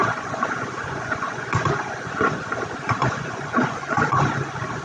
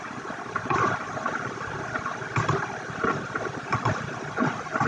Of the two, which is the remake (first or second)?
first